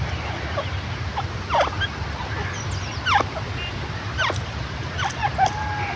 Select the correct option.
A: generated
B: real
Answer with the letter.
B